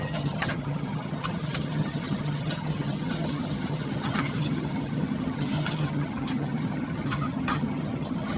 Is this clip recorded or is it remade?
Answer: remade